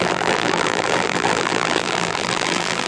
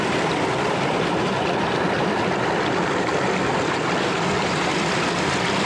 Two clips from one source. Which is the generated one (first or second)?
first